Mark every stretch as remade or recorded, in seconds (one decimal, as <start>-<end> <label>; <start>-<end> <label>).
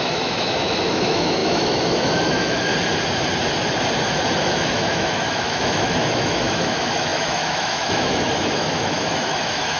0.0-2.7 remade; 2.7-4.4 recorded; 4.4-9.8 remade